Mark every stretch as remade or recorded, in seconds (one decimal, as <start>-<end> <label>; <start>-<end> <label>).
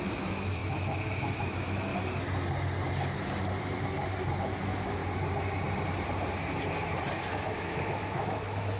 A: 0.0-1.9 remade; 1.9-4.4 recorded; 4.4-5.0 remade; 5.0-7.3 recorded; 7.3-8.8 remade